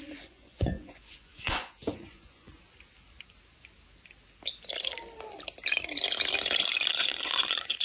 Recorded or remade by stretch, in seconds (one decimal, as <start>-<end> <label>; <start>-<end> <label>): 0.0-2.5 remade; 2.5-6.9 recorded; 6.9-7.8 remade